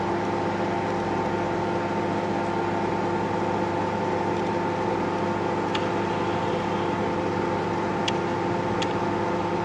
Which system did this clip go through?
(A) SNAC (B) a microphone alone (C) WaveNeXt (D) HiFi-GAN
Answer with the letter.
B